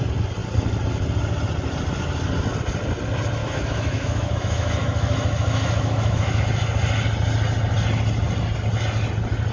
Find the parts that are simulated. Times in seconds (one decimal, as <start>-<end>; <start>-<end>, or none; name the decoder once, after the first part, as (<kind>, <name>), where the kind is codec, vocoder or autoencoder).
3.4-6.4 (autoencoder, DAC-VAE)